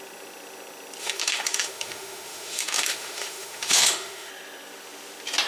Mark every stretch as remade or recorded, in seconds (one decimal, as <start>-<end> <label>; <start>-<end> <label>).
0.0-1.0 recorded; 1.0-4.3 remade; 4.3-5.5 recorded